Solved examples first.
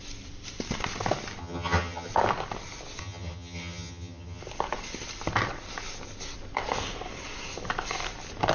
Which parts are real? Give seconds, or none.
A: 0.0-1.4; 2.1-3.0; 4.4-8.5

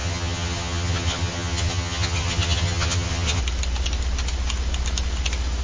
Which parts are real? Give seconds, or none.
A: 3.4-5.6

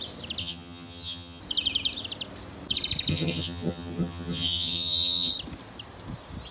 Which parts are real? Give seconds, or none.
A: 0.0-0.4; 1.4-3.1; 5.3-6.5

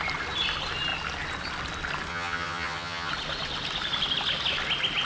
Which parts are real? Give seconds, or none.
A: 0.0-2.1; 3.1-5.1

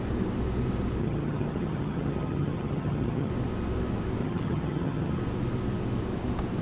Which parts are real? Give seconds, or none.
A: 0.0-1.0; 3.3-4.2; 5.2-6.6

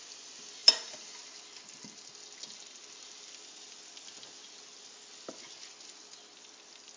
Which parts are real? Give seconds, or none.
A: 0.0-7.0